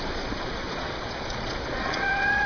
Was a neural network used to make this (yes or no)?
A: yes